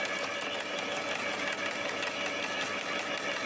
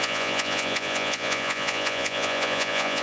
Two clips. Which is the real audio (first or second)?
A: first